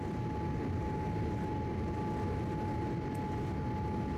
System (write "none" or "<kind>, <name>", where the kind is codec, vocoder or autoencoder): none